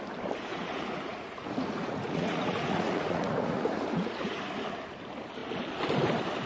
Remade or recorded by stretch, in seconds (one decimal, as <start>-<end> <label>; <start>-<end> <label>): 0.0-0.5 recorded; 0.5-4.4 remade; 4.4-6.5 recorded